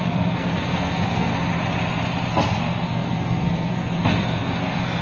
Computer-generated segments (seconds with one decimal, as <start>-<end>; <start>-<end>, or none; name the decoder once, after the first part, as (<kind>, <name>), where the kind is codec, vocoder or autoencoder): 0.0-1.3 (codec, SNAC); 2.3-5.0